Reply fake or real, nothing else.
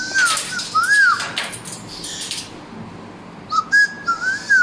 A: real